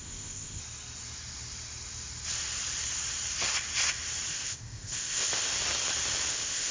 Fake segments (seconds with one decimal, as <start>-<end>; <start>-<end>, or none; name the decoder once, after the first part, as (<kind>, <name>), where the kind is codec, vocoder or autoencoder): 0.0-0.6 (codec, ZipCodec); 4.3-5.5; 6.3-6.7